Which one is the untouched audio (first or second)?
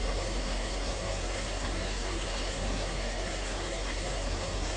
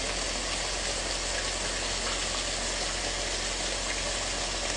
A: second